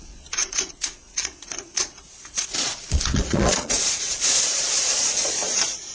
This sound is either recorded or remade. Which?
remade